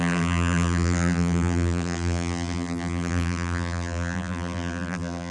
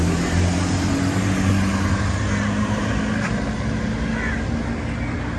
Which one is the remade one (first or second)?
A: first